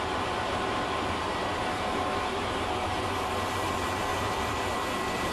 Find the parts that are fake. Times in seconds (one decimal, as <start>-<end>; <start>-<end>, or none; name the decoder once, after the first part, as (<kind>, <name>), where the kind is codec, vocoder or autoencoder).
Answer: 4.1-5.3 (vocoder, BigVGAN v2)